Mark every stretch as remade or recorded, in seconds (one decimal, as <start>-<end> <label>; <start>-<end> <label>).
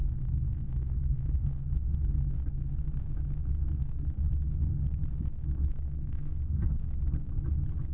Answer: 0.0-1.6 remade; 1.6-5.7 recorded; 5.7-6.8 remade; 6.8-7.9 recorded